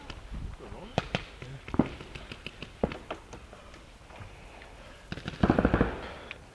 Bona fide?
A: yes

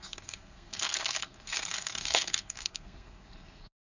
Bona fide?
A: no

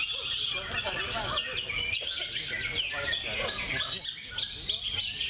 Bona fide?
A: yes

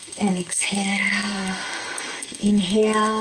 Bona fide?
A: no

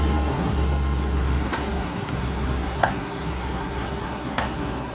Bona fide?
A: no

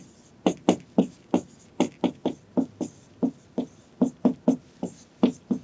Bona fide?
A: yes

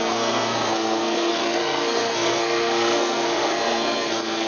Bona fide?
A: no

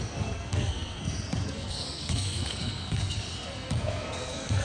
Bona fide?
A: no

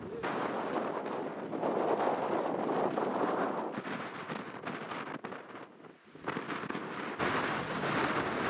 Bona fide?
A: yes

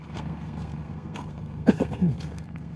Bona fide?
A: no